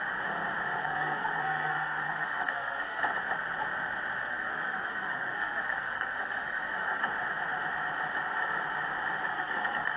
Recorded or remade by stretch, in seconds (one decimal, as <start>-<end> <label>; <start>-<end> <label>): 0.0-0.8 recorded; 0.8-3.0 remade; 3.0-4.3 recorded; 4.3-7.1 remade; 7.1-9.3 recorded; 9.3-10.0 remade